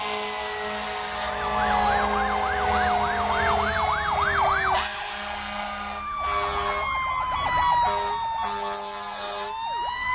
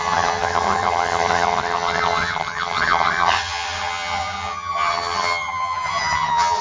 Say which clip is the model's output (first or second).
second